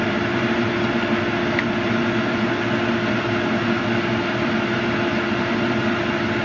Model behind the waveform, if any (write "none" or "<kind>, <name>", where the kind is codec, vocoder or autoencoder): none